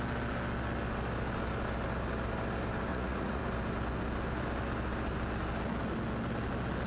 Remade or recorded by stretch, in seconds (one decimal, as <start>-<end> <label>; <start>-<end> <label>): 0.0-2.9 recorded; 2.9-3.4 remade; 3.4-6.9 recorded